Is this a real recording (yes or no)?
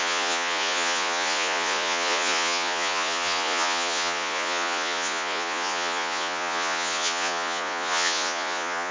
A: no